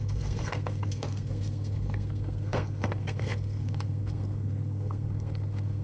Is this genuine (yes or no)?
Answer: no